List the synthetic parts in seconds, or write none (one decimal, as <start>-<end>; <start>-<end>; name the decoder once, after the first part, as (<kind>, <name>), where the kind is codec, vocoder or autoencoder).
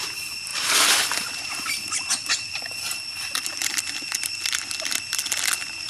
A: 0.5-2.1 (vocoder, BigVGAN v2)